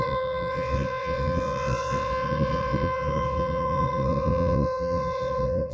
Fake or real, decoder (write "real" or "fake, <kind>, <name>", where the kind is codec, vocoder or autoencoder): fake, vocoder, WaveNeXt